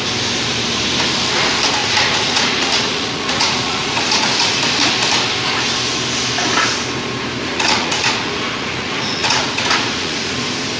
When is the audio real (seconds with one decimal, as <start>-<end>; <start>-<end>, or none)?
0.0-1.8; 4.6-7.5; 10.3-10.8